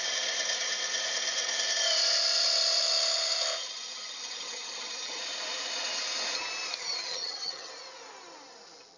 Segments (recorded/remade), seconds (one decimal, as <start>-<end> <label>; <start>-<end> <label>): 0.0-3.6 recorded; 3.6-5.2 remade; 5.2-6.8 recorded; 6.8-7.7 remade; 7.7-9.0 recorded